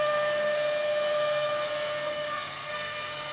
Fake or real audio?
fake